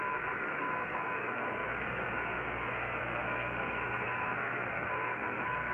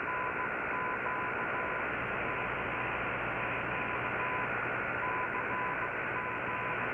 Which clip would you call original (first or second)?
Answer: second